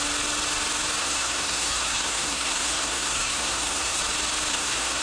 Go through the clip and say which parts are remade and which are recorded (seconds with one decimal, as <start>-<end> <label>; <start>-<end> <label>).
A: 0.0-1.0 recorded; 1.0-4.0 remade; 4.0-4.5 recorded; 4.5-5.0 remade